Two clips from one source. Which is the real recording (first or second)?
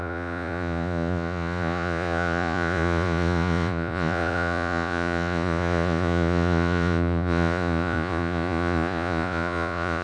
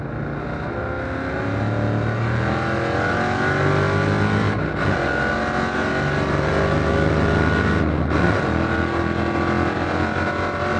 second